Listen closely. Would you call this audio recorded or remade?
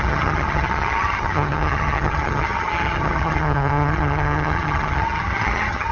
remade